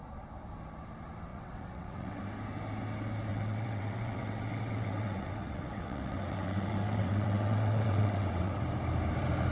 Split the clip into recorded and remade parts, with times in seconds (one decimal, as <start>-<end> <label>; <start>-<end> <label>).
0.0-1.3 recorded; 1.3-2.2 remade; 2.2-3.3 recorded; 3.3-8.6 remade; 8.6-9.5 recorded